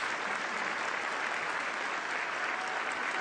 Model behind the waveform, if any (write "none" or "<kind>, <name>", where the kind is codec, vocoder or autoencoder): none